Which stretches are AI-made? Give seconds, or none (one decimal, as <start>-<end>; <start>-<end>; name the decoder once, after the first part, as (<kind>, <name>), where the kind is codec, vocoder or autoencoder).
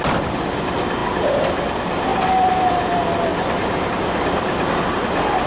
0.0-3.3 (vocoder, BigVGAN v2); 3.9-5.5